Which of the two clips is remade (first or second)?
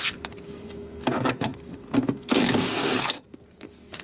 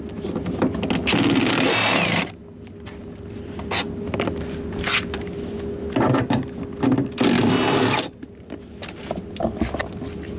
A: first